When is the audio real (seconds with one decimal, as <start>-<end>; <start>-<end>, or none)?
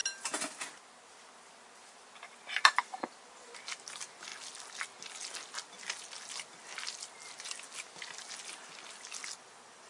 0.0-9.9